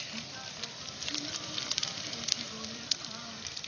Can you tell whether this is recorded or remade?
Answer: remade